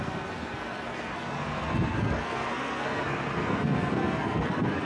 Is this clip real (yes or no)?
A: no